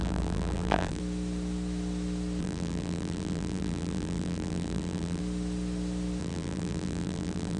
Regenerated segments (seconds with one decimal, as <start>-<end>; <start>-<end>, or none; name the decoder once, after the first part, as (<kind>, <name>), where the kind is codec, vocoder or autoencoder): 0.0-1.0 (vocoder, BigVGAN v2); 2.4-5.2; 6.2-7.6

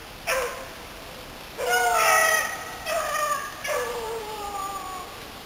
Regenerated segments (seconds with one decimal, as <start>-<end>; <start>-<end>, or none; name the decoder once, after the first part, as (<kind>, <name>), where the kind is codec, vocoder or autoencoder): 0.0-1.0 (vocoder, BigVGAN v2); 2.2-4.6

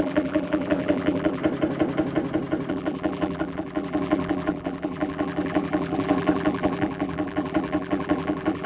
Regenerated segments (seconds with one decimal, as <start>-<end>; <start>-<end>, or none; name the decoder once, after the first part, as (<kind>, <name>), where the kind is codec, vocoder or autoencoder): 0.0-1.4 (vocoder, BigVGAN v2); 2.7-8.7

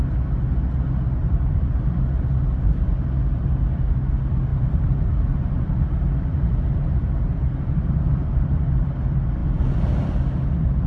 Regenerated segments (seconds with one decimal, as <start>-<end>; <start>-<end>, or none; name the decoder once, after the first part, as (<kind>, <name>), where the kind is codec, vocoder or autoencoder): 1.2-1.7 (vocoder, BigVGAN v2); 4.5-8.0

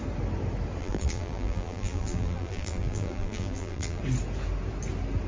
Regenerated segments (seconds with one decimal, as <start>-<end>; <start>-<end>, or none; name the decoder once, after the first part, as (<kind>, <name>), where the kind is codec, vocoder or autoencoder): 0.8-4.0 (vocoder, BigVGAN v2)

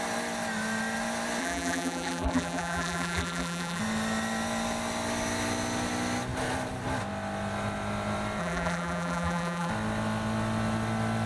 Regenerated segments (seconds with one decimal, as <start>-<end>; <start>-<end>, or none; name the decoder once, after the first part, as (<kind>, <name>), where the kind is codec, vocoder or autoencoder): 1.4-3.8 (vocoder, BigVGAN v2); 8.4-9.7

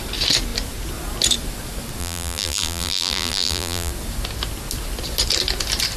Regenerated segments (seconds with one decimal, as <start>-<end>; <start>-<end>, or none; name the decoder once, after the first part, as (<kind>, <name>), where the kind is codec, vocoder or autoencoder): 2.0-3.9 (vocoder, BigVGAN v2)

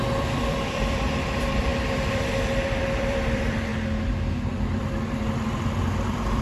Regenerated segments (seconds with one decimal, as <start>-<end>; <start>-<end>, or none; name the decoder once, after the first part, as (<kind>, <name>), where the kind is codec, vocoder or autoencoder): 0.0-3.7 (vocoder, BigVGAN v2); 4.3-6.4